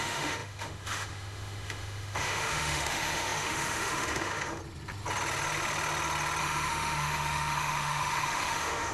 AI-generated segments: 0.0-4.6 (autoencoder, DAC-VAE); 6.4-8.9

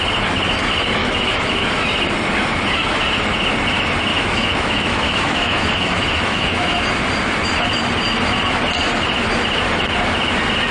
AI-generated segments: 1.0-1.6 (autoencoder, DAC-VAE); 4.1-6.8

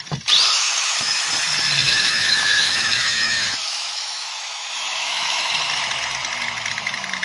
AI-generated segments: 0.5-1.2 (autoencoder, DAC-VAE); 1.8-5.5

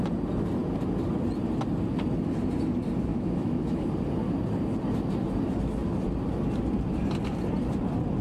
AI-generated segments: 3.1-3.9 (autoencoder, DAC-VAE)

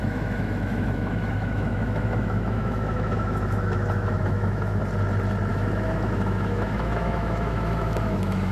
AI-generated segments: 0.0-4.8 (autoencoder, DAC-VAE); 5.5-8.5

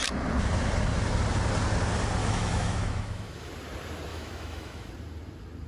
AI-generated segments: 2.2-3.5 (autoencoder, DAC-VAE); 4.1-4.9